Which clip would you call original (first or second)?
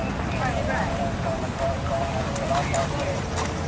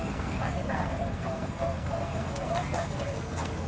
first